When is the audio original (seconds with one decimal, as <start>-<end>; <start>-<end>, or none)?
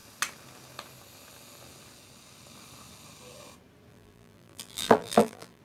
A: 0.0-3.9